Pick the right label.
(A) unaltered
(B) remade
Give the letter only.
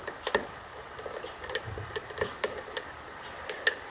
A